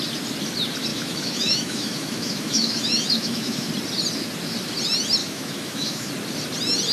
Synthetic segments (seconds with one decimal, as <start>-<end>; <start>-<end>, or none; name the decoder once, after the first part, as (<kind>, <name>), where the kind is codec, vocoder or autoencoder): 0.9-3.7 (autoencoder, DAC-VAE); 5.2-6.1